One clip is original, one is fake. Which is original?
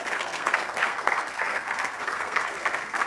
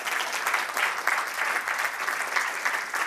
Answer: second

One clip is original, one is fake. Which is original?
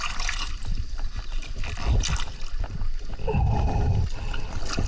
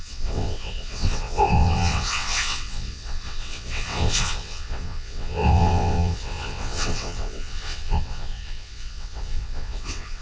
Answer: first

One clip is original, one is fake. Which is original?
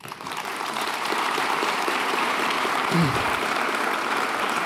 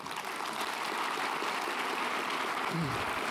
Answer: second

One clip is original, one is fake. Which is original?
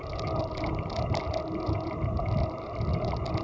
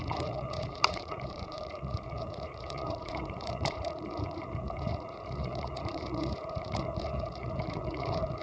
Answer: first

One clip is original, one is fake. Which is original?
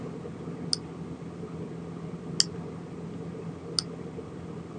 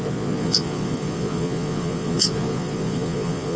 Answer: first